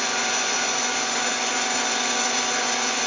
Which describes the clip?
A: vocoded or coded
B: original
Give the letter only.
A